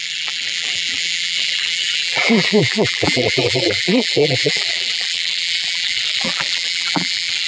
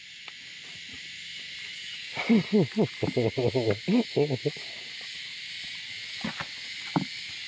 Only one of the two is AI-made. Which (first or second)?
first